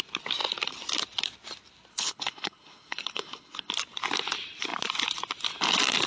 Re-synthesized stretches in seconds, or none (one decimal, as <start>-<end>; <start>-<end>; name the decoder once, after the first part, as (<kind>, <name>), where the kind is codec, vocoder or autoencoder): 1.9-3.7 (codec, HILCodec)